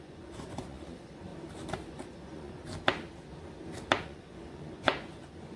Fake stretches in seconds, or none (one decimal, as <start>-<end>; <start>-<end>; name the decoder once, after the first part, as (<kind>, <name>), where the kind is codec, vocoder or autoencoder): 0.0-1.3 (vocoder, Vocos); 1.9-2.6; 4.0-5.6